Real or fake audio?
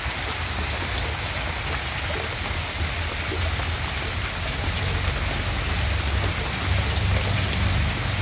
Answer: real